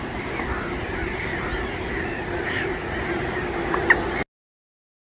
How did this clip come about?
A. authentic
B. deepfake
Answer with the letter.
A